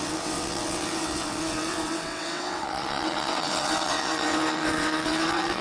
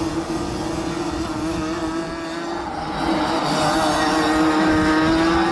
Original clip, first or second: second